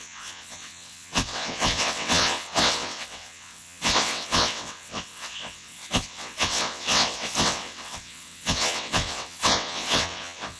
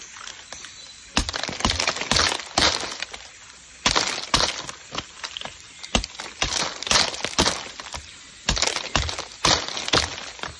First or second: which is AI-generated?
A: first